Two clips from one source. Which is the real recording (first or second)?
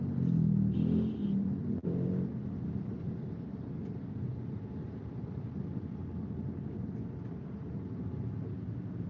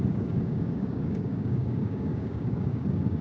first